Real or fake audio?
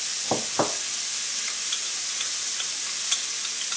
real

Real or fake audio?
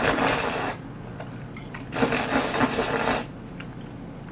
real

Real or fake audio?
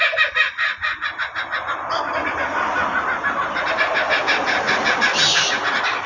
real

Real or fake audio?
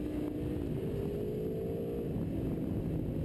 real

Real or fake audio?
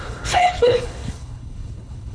fake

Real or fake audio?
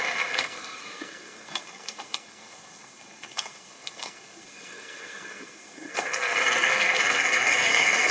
fake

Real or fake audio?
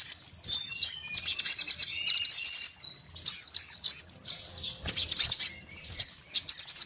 real